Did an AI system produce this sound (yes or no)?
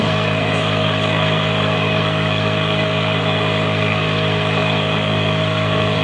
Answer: yes